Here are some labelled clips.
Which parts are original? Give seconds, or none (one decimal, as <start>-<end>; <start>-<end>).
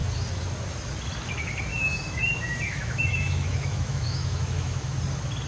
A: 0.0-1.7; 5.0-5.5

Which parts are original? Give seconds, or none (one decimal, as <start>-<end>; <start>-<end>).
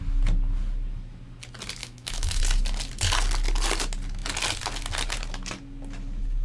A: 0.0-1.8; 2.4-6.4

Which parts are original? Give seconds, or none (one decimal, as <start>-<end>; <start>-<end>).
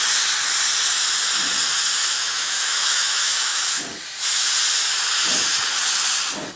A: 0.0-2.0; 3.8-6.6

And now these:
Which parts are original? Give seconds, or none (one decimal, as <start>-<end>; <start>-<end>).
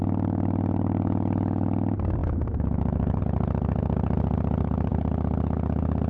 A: 0.0-2.2; 3.2-6.1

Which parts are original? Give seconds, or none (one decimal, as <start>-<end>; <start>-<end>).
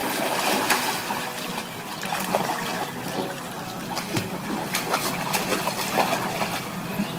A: 0.0-7.2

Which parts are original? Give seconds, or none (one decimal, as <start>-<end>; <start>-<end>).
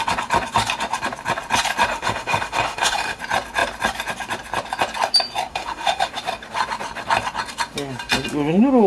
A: 0.0-1.9; 3.2-5.5; 6.1-8.9